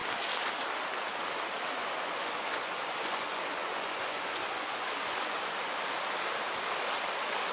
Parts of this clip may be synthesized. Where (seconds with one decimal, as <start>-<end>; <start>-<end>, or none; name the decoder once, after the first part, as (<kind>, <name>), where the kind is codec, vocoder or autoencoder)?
1.8-5.5 (vocoder, Vocos)